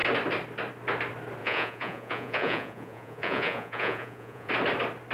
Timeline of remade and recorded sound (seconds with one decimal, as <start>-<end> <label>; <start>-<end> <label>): 0.0-1.4 recorded; 1.4-4.5 remade; 4.5-5.1 recorded